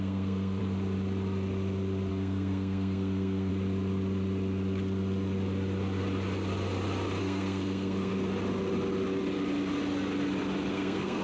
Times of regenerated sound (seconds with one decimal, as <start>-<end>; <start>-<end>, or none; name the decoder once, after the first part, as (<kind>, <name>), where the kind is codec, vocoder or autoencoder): 0.0-0.6 (codec, SNAC); 2.1-3.5; 7.2-8.1; 10.7-11.2